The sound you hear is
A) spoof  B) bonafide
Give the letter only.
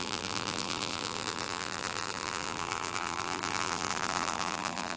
A